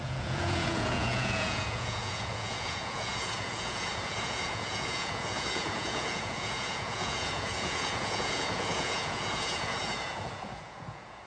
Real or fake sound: fake